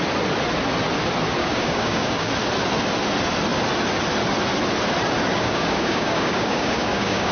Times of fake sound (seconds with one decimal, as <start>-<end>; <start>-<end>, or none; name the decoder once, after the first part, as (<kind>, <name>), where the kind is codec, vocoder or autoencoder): 1.4-2.3 (codec, DAC); 5.3-7.3